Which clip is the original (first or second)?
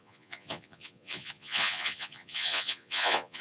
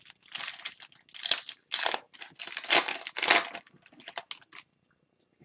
second